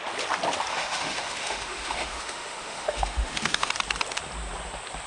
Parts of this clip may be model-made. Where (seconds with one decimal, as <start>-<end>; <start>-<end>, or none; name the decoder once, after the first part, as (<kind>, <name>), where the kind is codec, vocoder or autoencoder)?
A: 0.7-3.7 (autoencoder, DAC-VAE)